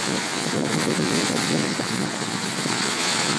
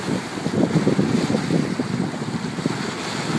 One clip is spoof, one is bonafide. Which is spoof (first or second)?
first